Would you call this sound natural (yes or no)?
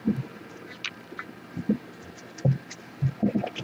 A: yes